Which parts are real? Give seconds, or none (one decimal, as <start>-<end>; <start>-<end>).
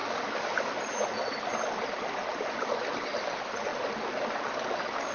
0.0-5.1